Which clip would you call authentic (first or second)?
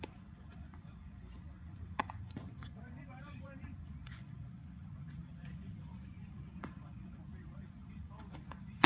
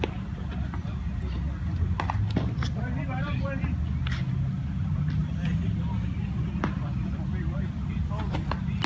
second